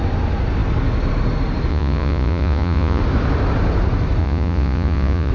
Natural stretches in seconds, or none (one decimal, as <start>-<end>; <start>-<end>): 0.0-1.7; 3.0-4.2